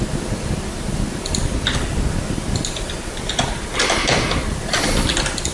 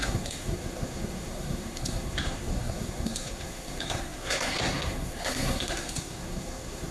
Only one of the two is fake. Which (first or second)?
second